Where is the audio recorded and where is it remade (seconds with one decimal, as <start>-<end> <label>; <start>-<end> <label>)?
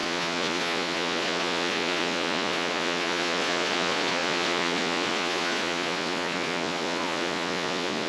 0.0-8.1 remade